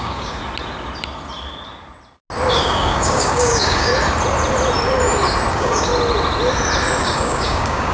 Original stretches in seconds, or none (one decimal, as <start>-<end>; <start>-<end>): 0.4-2.5; 3.9-5.5; 5.9-7.0